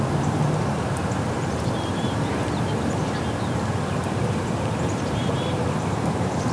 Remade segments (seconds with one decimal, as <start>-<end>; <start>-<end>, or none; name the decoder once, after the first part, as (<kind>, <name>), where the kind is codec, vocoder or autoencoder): 0.0-1.0 (vocoder, BigVGAN v2); 4.9-6.5

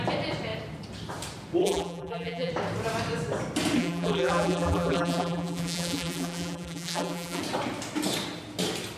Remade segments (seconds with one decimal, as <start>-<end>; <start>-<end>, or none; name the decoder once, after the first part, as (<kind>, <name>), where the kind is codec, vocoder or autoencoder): 1.6-2.5 (vocoder, BigVGAN v2); 3.8-7.4

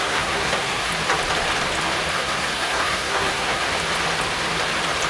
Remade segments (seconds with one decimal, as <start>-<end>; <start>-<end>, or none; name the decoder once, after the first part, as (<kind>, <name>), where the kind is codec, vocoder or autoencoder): 0.0-0.9 (codec, SNAC); 2.1-3.6

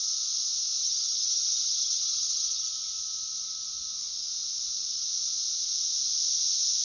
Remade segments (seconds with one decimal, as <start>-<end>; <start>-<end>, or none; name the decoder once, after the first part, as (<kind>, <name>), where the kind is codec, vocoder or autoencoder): 0.8-2.7 (vocoder, HiFi-GAN)

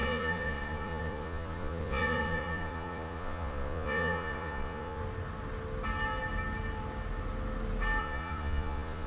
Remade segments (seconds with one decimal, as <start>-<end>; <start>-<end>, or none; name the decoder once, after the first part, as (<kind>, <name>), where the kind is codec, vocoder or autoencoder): 0.0-5.0 (vocoder, Vocos); 8.0-9.1

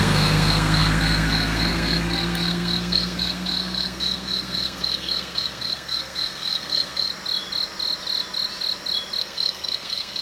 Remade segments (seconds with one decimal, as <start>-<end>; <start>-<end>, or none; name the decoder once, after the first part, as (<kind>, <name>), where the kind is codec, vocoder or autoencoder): 0.0-7.1 (codec, SNAC); 9.2-10.2